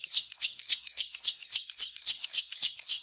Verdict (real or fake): fake